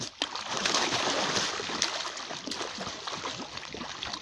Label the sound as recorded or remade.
recorded